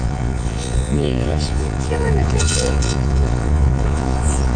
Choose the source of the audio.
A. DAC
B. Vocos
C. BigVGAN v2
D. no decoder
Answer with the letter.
B